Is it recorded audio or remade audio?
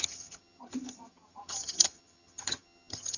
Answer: remade